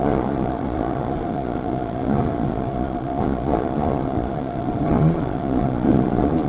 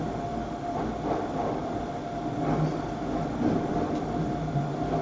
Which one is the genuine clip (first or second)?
second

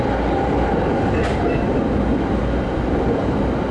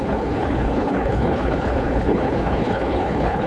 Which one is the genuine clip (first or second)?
first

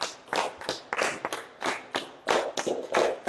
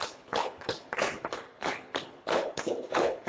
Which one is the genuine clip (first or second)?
first